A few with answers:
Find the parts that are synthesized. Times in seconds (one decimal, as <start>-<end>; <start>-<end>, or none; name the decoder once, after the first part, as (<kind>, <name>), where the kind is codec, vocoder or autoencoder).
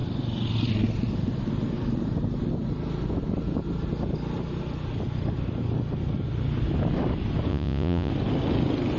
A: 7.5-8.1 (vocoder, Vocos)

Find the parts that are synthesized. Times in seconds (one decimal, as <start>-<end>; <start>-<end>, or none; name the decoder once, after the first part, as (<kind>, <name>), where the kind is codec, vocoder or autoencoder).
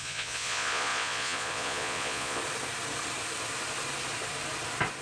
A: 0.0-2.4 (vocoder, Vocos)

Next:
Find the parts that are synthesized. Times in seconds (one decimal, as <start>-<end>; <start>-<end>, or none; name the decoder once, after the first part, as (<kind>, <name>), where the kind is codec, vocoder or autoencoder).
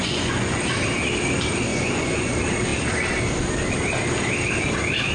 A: 0.0-0.6 (vocoder, Vocos); 1.7-2.3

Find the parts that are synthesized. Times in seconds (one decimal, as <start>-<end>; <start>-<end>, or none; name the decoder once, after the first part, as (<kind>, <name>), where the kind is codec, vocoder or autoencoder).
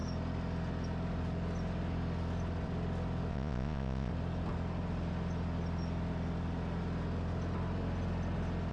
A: 3.3-4.1 (vocoder, Vocos)